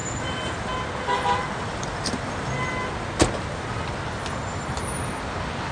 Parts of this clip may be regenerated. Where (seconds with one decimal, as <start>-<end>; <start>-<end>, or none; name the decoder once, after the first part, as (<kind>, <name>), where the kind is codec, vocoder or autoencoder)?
none

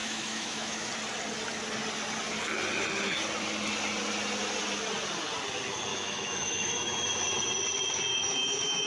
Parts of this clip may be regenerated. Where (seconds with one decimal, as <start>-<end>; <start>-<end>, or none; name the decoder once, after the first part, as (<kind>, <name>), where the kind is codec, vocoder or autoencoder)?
0.0-0.9 (autoencoder, DAC-VAE); 5.9-7.2; 8.1-8.9